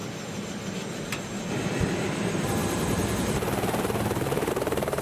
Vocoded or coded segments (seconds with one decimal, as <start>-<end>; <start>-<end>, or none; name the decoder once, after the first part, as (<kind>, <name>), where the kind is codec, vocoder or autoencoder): 1.5-5.0 (vocoder, BigVGAN v2)